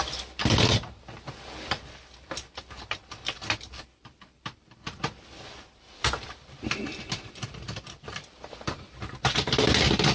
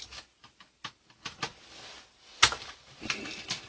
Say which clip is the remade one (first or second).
first